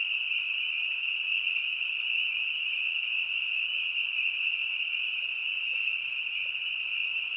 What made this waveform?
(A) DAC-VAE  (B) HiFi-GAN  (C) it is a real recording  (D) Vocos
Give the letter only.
C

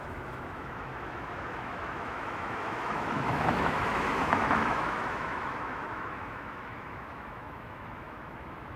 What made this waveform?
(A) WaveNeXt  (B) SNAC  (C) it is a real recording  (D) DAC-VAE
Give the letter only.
D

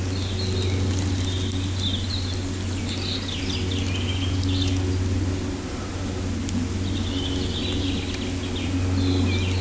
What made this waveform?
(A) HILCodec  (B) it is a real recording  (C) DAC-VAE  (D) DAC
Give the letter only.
B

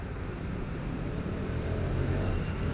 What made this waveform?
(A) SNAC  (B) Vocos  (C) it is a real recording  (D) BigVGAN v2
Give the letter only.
D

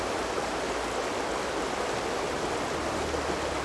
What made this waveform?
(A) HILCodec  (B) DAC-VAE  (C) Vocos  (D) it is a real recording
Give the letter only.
D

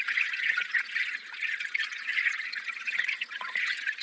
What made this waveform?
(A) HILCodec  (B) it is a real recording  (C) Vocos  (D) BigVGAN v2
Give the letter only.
C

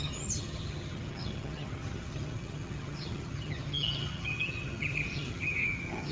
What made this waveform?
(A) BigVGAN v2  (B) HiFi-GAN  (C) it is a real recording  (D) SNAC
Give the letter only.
B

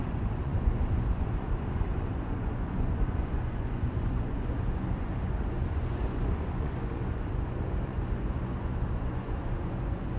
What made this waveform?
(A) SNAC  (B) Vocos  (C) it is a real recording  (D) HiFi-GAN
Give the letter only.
B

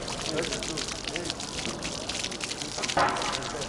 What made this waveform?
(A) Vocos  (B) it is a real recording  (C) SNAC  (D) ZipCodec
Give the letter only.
B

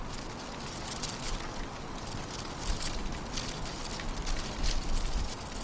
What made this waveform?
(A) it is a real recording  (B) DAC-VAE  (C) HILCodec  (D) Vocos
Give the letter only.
A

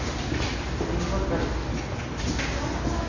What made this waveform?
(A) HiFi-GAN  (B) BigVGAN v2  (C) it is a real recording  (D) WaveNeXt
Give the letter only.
C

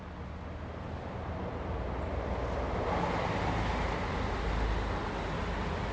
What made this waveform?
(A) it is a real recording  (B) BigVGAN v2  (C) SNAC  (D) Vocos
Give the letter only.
A